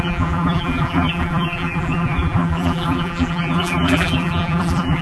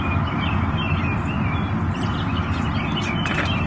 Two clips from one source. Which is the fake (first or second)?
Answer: first